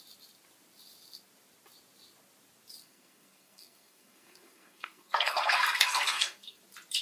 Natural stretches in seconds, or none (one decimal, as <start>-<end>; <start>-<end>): 0.0-2.8; 6.6-7.0